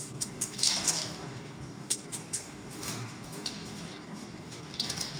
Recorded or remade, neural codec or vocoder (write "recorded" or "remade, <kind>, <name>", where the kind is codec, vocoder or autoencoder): remade, codec, DAC